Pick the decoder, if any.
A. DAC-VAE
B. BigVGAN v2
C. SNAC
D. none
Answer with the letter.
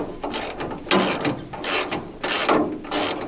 D